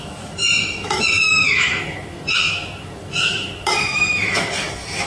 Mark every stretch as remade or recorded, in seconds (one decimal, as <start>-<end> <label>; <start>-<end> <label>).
0.0-5.1 remade